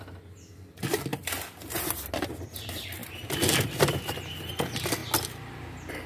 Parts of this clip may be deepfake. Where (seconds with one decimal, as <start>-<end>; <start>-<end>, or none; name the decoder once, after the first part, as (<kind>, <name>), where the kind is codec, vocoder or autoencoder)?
none